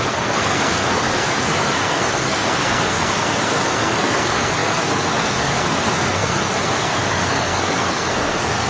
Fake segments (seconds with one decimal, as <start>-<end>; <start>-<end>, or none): 0.0-8.7